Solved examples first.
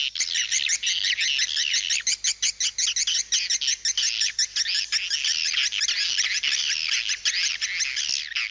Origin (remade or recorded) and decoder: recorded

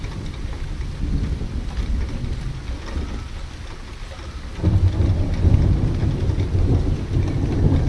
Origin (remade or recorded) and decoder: recorded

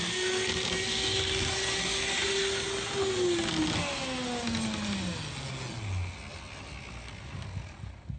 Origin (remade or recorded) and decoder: recorded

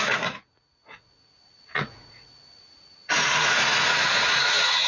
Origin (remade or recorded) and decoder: remade, vocoder, Vocos